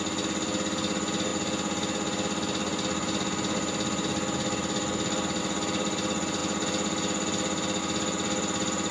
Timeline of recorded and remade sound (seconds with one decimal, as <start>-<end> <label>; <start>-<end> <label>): 0.0-8.9 recorded